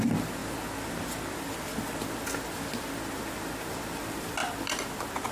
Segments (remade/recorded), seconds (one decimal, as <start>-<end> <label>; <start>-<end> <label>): 0.0-5.3 recorded